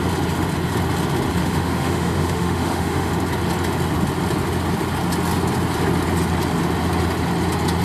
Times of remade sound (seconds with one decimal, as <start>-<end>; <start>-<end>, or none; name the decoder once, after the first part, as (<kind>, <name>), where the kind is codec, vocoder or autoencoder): 1.4-3.1 (autoencoder, DAC-VAE)